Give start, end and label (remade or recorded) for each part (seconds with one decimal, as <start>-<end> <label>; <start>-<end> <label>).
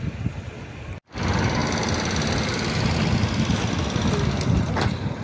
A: 0.0-5.2 recorded